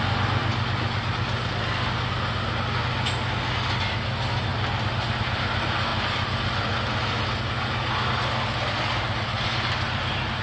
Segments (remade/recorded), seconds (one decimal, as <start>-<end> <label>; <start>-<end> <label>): 0.0-10.4 recorded